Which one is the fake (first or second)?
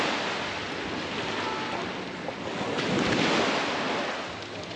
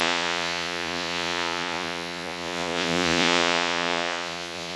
second